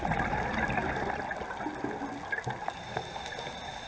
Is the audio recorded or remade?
recorded